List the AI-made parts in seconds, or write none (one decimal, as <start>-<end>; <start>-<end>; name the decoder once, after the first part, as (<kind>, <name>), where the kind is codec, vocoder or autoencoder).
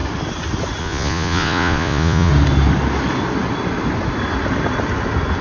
0.8-2.3 (vocoder, Vocos)